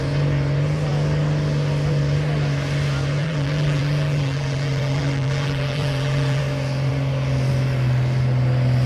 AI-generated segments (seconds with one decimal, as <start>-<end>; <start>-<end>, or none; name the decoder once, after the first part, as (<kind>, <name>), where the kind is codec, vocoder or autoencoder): 3.2-6.4 (vocoder, BigVGAN v2)